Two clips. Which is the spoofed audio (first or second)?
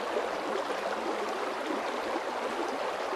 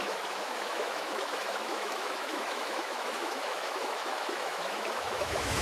second